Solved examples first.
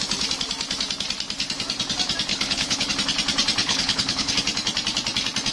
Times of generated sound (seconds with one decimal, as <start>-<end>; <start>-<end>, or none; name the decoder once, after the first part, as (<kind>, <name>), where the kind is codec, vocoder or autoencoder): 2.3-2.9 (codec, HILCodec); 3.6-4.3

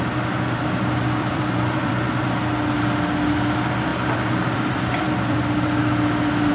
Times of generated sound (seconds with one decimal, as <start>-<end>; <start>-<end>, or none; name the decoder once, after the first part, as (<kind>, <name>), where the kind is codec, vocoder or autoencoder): 1.2-1.9 (vocoder, BigVGAN v2); 3.9-6.5

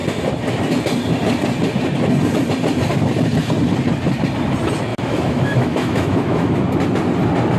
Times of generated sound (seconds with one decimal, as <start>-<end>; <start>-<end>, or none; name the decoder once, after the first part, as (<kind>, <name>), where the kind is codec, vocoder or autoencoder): 4.9-6.6 (autoencoder, DAC-VAE)